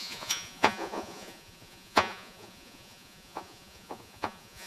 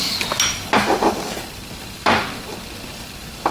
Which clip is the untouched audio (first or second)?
second